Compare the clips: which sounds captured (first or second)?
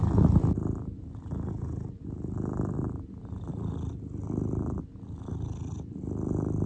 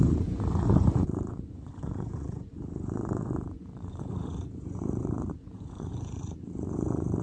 first